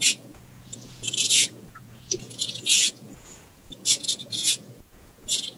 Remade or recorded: remade